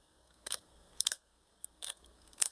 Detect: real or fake fake